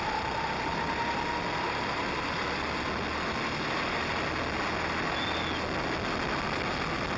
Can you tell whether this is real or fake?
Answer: real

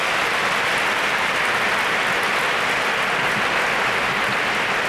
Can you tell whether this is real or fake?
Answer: real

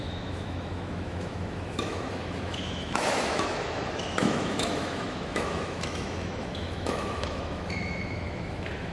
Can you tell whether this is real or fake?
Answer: fake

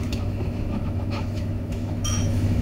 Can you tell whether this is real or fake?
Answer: fake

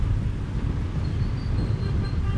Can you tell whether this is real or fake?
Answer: real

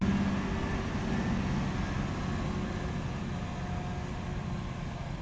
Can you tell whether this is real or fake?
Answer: real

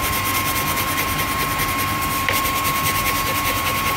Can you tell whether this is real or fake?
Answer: real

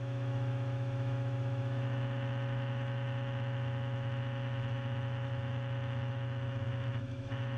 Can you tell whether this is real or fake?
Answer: fake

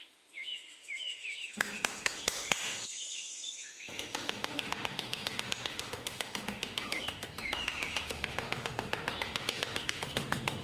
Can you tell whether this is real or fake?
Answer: fake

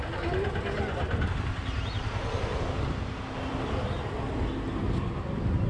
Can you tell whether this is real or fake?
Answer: real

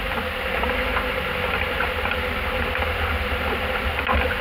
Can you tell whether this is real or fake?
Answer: real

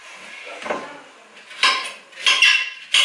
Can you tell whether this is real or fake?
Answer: real